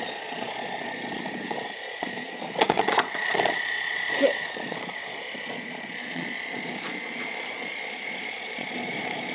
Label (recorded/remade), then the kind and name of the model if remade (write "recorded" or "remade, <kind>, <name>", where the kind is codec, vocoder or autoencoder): remade, vocoder, Vocos